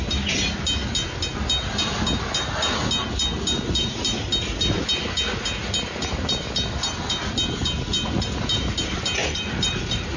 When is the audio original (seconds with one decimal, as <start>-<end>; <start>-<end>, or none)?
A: 0.0-9.2